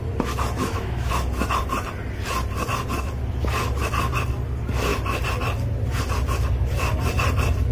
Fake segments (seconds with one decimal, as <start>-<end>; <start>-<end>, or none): 0.6-1.1